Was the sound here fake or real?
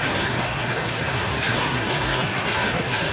fake